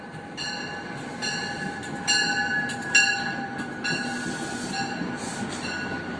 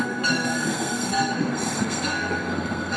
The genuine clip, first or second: first